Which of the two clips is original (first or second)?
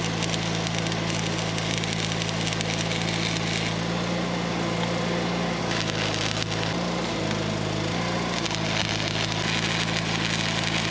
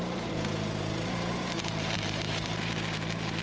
first